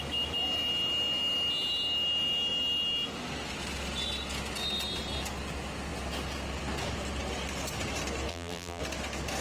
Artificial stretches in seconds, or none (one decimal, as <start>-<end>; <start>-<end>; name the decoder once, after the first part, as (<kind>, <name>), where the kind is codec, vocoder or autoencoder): 8.3-8.8 (vocoder, BigVGAN v2)